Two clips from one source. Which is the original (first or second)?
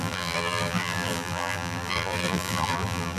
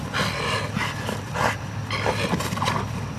second